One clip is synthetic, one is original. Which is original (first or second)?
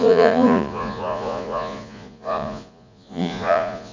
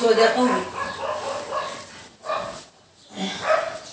second